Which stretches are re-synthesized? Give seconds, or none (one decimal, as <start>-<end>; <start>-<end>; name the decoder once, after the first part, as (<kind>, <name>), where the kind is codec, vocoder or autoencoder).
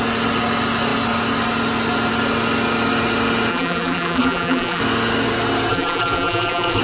3.5-4.8 (vocoder, BigVGAN v2); 5.7-6.8